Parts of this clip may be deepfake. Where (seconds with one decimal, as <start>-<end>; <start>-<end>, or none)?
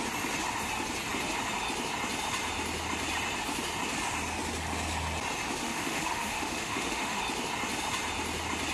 5.6-7.2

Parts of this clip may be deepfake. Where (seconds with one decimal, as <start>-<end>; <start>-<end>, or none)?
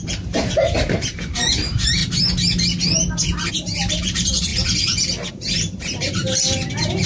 0.0-2.0; 3.5-4.5; 5.3-7.1